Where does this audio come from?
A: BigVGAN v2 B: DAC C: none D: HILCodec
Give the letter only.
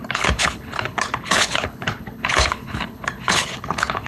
D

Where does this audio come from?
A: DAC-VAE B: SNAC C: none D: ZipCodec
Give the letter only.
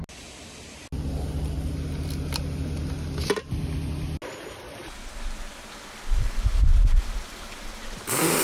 C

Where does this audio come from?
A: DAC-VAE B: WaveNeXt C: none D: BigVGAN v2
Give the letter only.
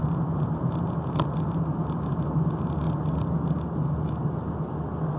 C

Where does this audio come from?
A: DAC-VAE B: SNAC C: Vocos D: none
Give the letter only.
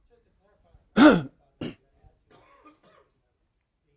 D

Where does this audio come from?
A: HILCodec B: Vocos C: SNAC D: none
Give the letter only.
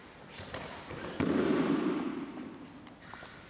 D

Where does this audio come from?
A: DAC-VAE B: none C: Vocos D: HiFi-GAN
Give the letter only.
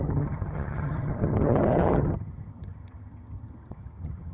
D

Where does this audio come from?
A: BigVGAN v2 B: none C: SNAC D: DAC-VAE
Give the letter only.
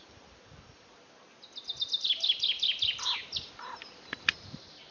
B